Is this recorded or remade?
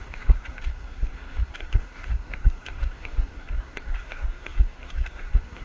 remade